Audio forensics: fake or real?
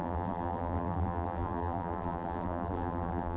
fake